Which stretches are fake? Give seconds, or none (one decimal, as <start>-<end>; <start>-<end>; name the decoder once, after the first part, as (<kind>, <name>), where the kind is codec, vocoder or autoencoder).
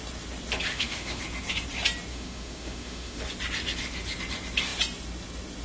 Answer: 0.7-1.2 (autoencoder, DAC-VAE); 2.1-3.2